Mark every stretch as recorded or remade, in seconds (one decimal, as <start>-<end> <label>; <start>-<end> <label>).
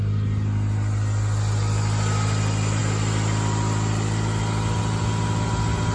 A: 0.0-5.9 recorded